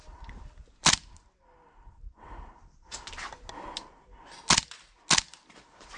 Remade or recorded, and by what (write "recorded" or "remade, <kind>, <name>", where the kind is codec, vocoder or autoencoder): recorded